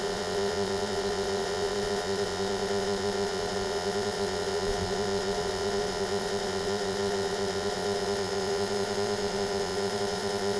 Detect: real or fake fake